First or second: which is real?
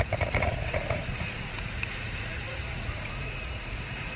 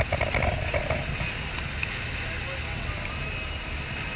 second